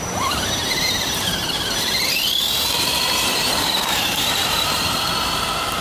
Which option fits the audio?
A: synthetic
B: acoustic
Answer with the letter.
A